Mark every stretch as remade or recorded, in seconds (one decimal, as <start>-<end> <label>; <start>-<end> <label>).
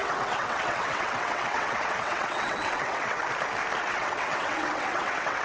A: 0.0-3.2 remade; 3.2-3.8 recorded; 3.8-5.4 remade